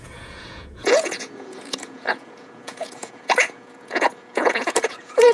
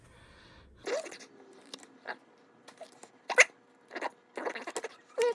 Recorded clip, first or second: second